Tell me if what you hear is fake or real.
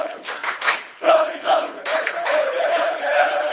fake